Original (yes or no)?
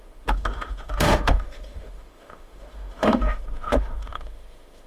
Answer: no